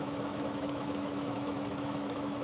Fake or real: fake